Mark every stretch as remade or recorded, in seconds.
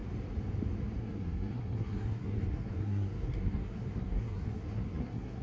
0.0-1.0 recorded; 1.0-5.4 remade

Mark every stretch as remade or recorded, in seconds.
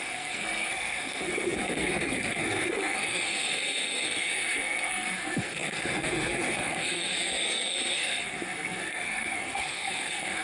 0.0-10.4 remade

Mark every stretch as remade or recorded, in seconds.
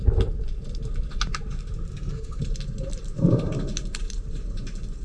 0.0-1.9 recorded; 1.9-2.4 remade; 2.4-5.0 recorded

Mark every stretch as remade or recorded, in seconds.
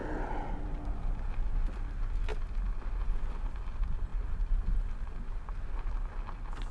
0.0-6.7 recorded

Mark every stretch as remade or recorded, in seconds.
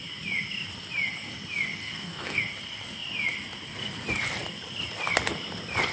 0.0-1.8 recorded; 1.8-2.4 remade; 2.4-5.9 recorded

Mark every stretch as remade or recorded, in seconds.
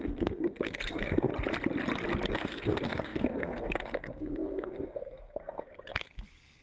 0.0-1.3 remade; 1.3-2.3 recorded; 2.3-6.6 remade